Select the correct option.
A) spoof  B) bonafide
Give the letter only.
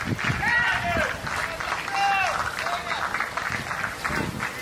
B